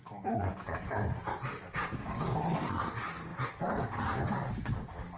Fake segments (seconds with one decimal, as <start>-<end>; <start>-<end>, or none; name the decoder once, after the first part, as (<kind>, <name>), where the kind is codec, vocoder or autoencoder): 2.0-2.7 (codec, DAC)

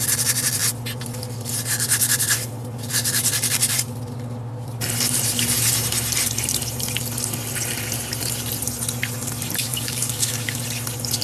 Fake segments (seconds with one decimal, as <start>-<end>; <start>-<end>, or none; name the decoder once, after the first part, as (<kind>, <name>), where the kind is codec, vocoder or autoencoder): 9.6-10.6 (codec, DAC)

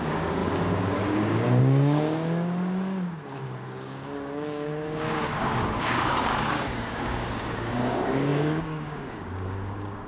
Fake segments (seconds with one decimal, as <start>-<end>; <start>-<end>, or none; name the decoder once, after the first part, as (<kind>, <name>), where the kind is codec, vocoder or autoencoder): 0.0-10.1 (codec, DAC)

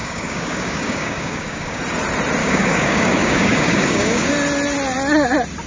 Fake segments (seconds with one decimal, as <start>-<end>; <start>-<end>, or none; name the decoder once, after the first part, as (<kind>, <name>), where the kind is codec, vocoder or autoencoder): 0.0-1.8 (codec, DAC); 2.4-4.3

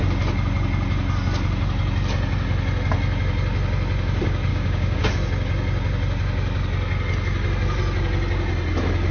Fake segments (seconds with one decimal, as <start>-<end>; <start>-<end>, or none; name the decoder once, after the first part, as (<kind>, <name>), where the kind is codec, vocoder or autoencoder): 4.5-5.1 (codec, DAC)